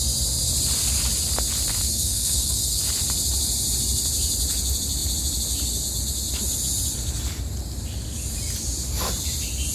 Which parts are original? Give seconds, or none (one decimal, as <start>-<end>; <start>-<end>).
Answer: 0.0-1.7; 2.8-9.7